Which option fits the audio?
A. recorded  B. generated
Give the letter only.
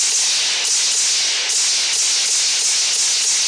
A